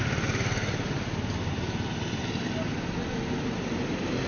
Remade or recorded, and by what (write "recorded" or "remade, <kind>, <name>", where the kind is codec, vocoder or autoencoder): recorded